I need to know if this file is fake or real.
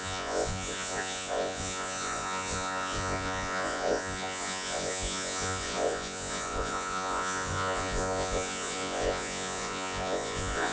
fake